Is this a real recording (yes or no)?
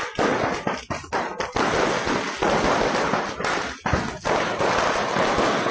yes